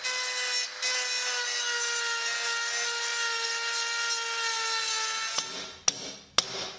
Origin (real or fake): real